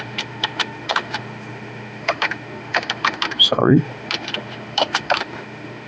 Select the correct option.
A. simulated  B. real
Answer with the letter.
A